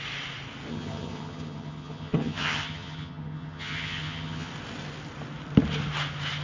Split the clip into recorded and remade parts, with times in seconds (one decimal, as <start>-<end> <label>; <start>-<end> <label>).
0.0-0.7 recorded; 0.7-4.5 remade; 4.5-6.4 recorded